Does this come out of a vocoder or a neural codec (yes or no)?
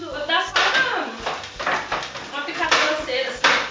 no